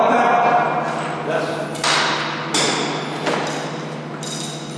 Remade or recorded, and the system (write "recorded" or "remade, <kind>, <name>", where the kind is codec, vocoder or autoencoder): recorded